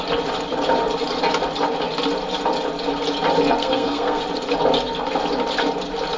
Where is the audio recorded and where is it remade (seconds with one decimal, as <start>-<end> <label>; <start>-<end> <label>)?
0.0-3.6 recorded; 3.6-4.2 remade; 4.2-6.2 recorded